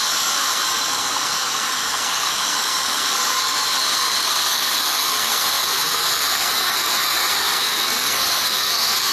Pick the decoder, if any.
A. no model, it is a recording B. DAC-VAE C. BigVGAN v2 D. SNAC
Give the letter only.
D